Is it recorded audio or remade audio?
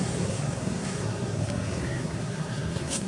remade